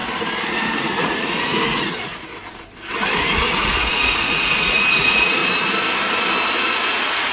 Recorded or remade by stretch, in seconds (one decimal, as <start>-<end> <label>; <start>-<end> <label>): 0.0-0.5 recorded; 0.5-2.3 remade; 2.3-3.2 recorded; 3.2-5.4 remade; 5.4-6.6 recorded; 6.6-7.3 remade